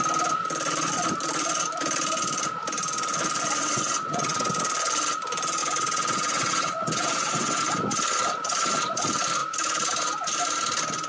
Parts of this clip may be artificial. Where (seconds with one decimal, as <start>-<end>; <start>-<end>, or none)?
3.6-4.5; 5.6-7.6